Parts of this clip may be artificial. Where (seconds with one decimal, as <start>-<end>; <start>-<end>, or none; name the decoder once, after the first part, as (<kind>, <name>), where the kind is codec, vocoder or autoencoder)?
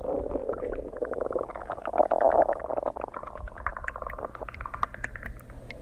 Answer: 1.0-2.6 (autoencoder, DAC-VAE)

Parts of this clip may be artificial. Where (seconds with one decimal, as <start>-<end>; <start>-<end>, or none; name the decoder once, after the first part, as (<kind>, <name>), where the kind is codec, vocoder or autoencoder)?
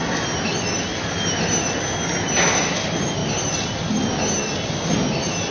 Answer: none